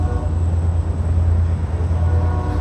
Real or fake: real